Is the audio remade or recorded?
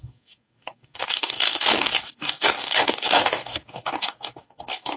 remade